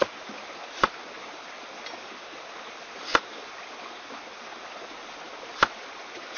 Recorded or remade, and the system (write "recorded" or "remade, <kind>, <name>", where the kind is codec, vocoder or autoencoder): recorded